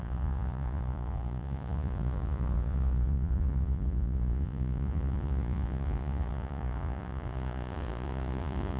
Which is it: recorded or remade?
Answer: remade